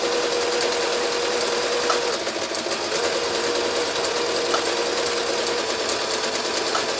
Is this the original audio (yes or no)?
yes